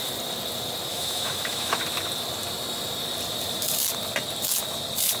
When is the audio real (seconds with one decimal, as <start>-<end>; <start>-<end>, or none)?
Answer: 0.0-0.9; 1.8-5.2